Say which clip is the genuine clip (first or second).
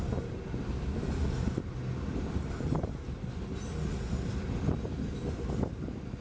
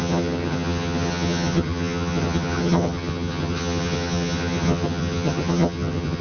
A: first